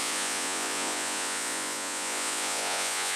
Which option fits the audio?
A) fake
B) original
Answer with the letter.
A